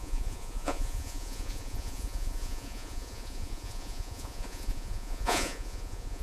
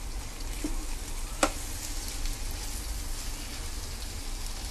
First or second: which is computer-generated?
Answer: first